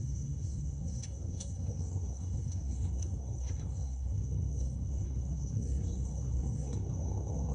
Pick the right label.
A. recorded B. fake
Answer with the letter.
B